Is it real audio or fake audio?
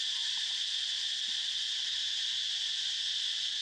fake